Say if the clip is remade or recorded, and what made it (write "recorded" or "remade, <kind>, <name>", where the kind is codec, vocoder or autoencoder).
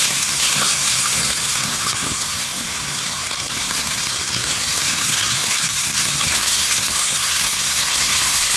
remade, codec, SNAC